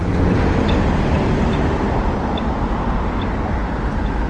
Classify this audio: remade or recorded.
recorded